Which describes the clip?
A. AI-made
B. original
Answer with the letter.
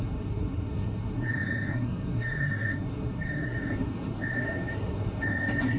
A